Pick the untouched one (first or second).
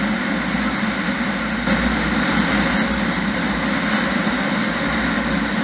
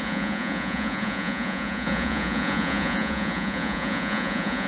first